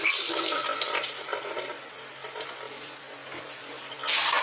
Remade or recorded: recorded